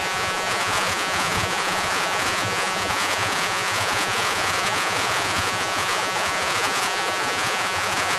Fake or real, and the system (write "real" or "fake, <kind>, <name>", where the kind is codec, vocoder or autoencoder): fake, vocoder, Vocos